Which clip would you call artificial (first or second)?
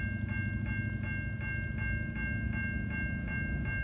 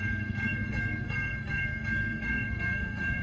second